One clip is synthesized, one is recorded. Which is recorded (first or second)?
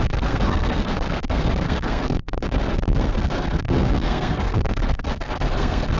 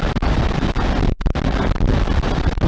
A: second